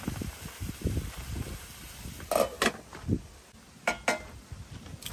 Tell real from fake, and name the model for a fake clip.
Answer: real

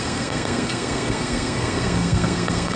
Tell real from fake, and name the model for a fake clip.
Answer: fake, codec, SNAC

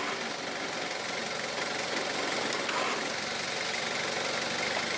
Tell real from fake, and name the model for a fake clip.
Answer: real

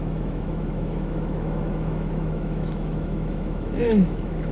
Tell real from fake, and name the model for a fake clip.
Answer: fake, autoencoder, DAC-VAE